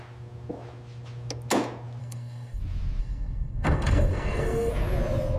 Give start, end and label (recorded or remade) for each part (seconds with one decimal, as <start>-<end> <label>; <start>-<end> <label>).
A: 0.0-2.0 recorded; 2.0-2.6 remade; 2.6-3.0 recorded; 3.0-4.7 remade; 4.7-5.4 recorded